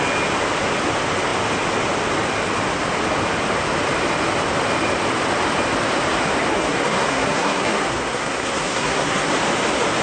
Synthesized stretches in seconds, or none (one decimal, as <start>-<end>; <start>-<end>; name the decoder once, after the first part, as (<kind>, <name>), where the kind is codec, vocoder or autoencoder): 6.5-9.3 (codec, SNAC)

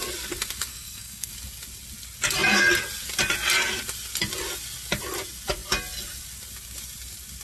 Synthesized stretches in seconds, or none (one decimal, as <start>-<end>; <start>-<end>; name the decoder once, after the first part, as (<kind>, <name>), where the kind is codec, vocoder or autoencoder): 0.7-1.3 (codec, SNAC)

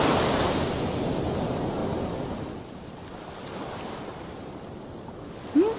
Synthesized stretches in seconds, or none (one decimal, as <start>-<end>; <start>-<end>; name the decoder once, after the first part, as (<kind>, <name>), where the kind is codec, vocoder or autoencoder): none

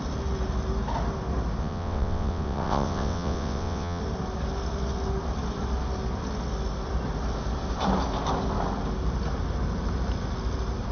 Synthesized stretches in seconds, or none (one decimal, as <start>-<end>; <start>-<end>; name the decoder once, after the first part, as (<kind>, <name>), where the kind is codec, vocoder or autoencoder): 1.6-4.0 (vocoder, WaveNeXt)

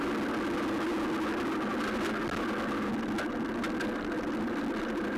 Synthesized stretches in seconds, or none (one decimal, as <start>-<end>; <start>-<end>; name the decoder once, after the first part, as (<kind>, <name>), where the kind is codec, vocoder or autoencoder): none